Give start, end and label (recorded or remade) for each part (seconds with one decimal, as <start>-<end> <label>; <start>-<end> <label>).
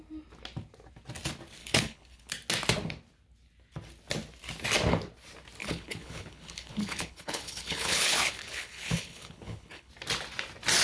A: 0.0-1.6 recorded; 1.6-2.3 remade; 2.3-5.6 recorded; 5.6-9.9 remade; 9.9-10.8 recorded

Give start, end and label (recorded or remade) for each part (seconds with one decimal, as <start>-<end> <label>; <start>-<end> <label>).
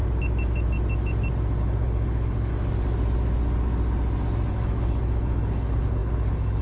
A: 0.0-1.6 recorded; 1.6-2.5 remade; 2.5-4.5 recorded; 4.5-6.6 remade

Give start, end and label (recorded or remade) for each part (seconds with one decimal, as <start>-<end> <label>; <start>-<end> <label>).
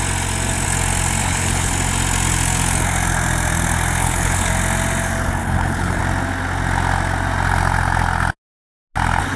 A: 0.0-1.2 recorded; 1.2-1.7 remade; 1.7-4.0 recorded; 4.0-4.5 remade; 4.5-5.4 recorded; 5.4-6.0 remade; 6.0-9.4 recorded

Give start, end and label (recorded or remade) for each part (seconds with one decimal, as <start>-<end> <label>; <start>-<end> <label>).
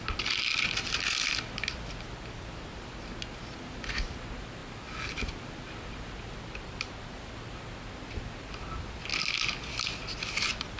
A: 0.0-10.8 recorded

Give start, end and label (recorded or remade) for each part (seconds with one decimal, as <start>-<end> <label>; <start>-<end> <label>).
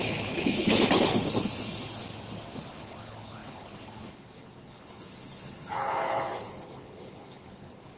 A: 0.0-2.0 remade; 2.0-2.7 recorded; 2.7-8.0 remade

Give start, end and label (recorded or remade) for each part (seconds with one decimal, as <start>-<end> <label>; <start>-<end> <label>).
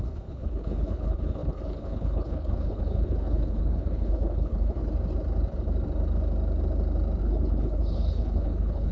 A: 0.0-4.8 remade; 4.8-7.2 recorded; 7.2-8.9 remade